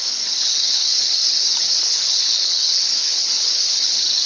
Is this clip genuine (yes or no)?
no